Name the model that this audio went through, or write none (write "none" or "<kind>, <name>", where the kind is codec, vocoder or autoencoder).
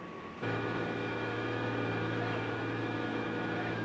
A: autoencoder, DAC-VAE